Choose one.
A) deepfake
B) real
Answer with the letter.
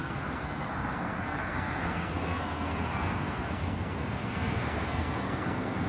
A